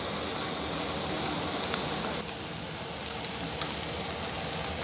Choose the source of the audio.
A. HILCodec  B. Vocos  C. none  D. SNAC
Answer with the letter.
C